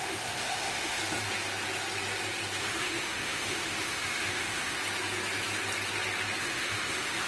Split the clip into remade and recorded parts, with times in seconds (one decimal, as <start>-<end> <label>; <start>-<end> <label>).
0.0-1.0 remade; 1.0-2.6 recorded; 2.6-4.8 remade; 4.8-6.4 recorded; 6.4-7.3 remade